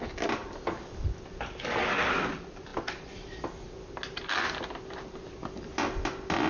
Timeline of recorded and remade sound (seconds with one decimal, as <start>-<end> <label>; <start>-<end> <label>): 0.0-6.5 recorded